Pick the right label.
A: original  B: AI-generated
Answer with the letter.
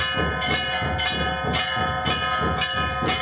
A